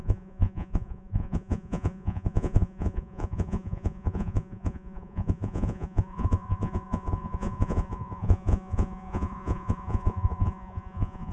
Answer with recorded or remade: remade